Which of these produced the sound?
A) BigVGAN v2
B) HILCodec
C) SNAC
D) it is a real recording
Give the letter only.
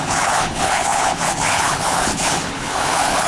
B